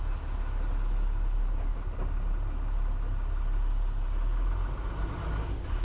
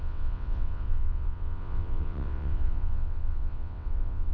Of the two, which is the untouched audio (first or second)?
first